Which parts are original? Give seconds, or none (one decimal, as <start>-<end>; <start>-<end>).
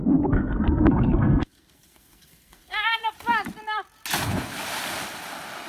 3.0-5.7